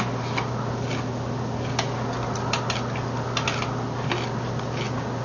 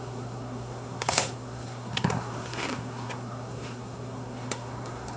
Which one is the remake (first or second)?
second